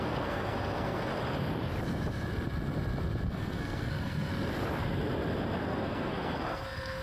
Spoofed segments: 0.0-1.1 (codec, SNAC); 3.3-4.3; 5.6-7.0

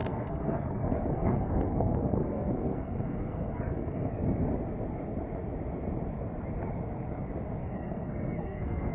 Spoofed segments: 0.0-4.1 (codec, SNAC); 7.6-8.9

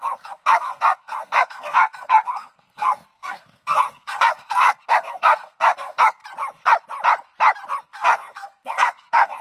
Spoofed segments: 0.0-6.2 (codec, SNAC); 7.8-9.4

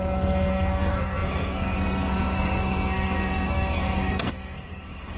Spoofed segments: 0.0-5.2 (codec, SNAC)

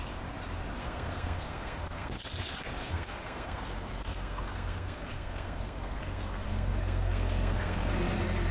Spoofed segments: 0.8-2.2 (codec, SNAC); 2.8-7.9

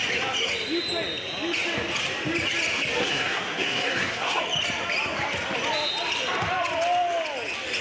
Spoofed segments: 3.0-4.4 (codec, SNAC)